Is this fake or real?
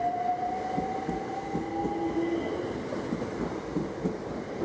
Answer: real